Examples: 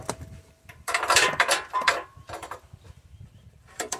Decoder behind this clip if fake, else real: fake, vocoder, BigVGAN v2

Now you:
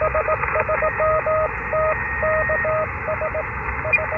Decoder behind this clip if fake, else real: real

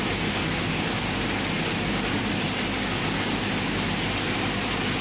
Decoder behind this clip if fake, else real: real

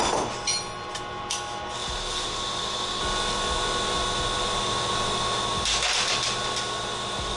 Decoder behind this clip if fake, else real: real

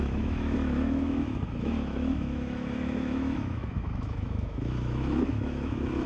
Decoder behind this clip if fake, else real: fake, autoencoder, DAC-VAE